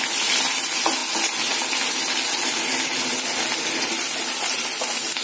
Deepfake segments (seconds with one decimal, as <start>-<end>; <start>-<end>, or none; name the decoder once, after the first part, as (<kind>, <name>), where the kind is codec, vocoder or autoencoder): none